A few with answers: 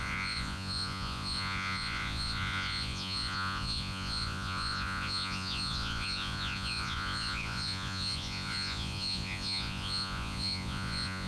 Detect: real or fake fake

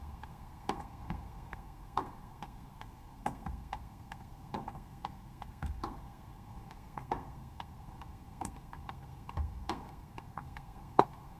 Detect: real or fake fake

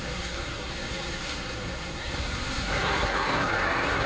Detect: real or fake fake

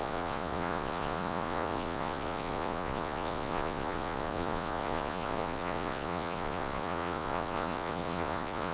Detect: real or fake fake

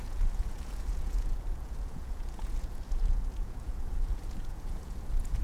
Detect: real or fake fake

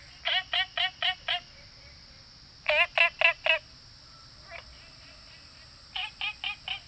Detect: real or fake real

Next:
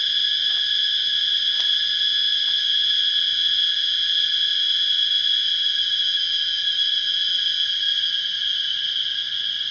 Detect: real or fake real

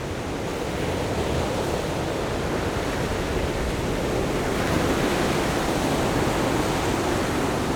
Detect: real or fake real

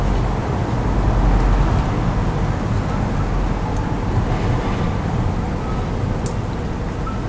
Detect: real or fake real